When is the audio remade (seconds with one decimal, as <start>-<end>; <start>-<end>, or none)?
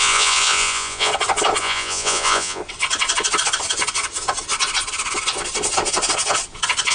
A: 0.0-1.1; 1.6-2.6